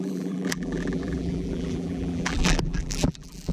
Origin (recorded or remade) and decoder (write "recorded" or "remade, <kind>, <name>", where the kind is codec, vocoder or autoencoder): remade, vocoder, BigVGAN v2